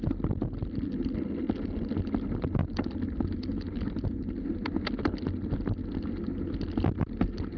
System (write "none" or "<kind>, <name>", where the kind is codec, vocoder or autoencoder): none